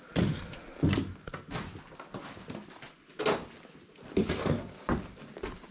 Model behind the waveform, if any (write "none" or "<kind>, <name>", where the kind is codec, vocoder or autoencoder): none